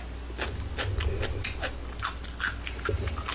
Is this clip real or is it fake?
real